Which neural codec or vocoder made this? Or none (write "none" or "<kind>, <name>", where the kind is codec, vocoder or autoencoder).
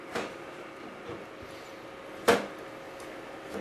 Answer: none